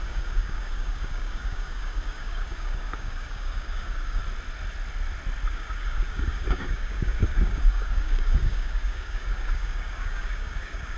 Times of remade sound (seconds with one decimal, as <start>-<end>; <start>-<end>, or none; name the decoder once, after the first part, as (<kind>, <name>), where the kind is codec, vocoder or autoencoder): 0.0-4.2 (codec, DAC); 5.5-11.0